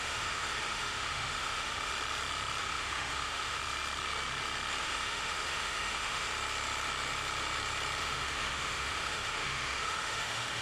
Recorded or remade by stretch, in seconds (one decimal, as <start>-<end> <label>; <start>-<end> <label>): 0.0-1.9 remade; 1.9-2.6 recorded; 2.6-3.6 remade; 3.6-4.8 recorded; 4.8-6.3 remade; 6.3-8.0 recorded; 8.0-10.6 remade